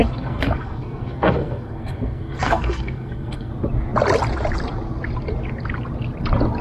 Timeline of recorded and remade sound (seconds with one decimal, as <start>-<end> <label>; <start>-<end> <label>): 0.0-3.5 remade; 3.5-6.6 recorded